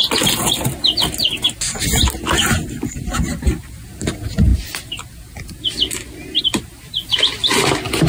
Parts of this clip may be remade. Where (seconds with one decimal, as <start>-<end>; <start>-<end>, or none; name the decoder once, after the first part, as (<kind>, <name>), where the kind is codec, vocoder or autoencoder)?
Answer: none